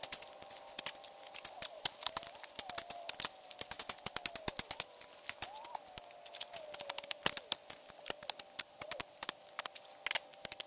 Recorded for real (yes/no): yes